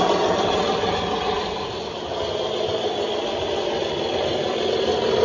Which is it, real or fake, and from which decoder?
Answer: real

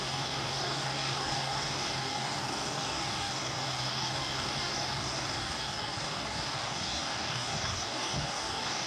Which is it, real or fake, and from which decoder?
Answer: fake, codec, DAC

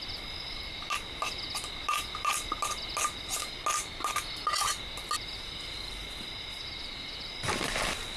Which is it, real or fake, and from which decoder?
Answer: real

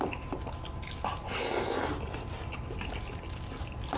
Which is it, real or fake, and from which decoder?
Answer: real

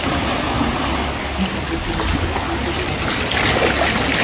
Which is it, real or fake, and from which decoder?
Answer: real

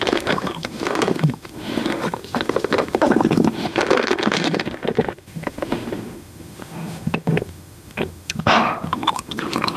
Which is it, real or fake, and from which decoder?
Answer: fake, autoencoder, DAC-VAE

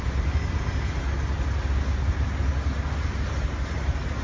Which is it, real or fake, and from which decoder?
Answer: real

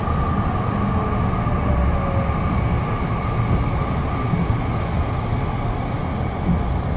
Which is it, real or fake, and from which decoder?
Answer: real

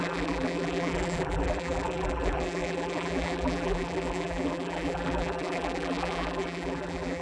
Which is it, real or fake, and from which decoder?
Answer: fake, vocoder, BigVGAN v2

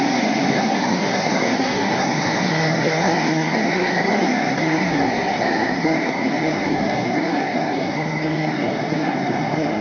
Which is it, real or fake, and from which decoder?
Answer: fake, codec, SNAC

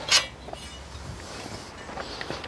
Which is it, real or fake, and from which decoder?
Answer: real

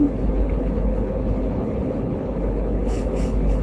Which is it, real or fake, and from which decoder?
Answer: fake, codec, HILCodec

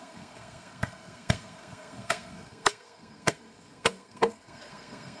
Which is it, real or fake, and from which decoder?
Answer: fake, codec, SNAC